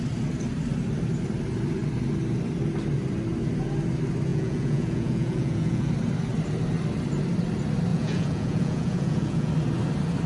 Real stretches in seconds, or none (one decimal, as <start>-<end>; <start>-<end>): 0.0-4.3; 5.9-7.9; 9.5-10.3